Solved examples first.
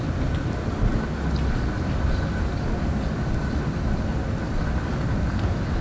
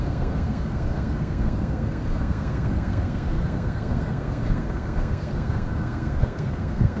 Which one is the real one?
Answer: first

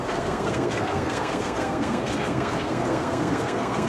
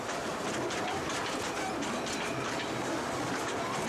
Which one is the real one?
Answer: second